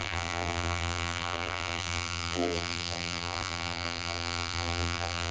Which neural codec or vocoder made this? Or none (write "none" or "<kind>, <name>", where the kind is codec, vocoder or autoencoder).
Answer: vocoder, BigVGAN v2